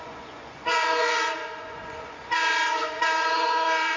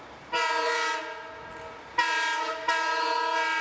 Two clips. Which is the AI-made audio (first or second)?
first